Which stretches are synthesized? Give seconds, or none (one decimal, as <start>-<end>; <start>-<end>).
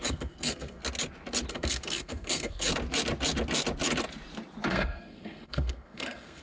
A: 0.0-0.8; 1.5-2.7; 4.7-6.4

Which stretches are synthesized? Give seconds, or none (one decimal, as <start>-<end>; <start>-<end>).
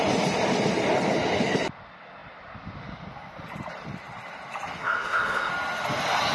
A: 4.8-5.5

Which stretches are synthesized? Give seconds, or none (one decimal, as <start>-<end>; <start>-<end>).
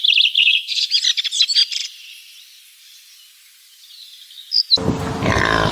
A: 0.4-0.9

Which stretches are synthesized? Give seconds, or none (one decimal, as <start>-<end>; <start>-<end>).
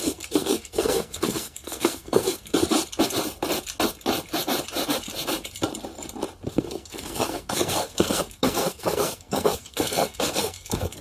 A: 0.0-2.6; 6.5-11.0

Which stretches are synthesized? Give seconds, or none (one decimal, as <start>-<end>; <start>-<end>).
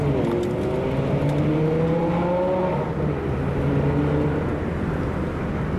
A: none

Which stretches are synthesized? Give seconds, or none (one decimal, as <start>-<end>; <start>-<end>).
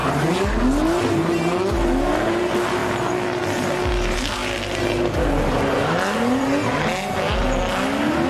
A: none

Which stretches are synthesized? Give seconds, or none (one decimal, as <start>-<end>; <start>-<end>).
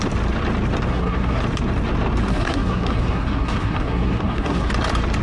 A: 0.9-1.4; 2.3-4.7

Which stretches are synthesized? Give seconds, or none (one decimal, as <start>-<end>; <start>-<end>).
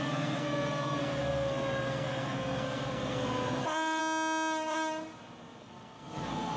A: 0.0-4.0; 5.6-6.6